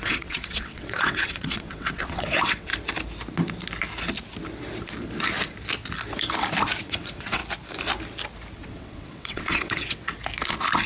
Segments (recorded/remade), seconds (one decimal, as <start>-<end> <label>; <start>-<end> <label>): 0.0-2.7 remade; 2.7-6.8 recorded; 6.8-7.4 remade; 7.4-8.5 recorded; 8.5-10.1 remade; 10.1-10.9 recorded